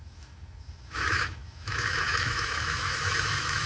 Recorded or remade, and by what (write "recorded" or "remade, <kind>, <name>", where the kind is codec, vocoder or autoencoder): remade, autoencoder, DAC-VAE